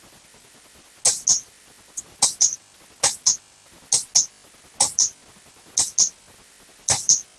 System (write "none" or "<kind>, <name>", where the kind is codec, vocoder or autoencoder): none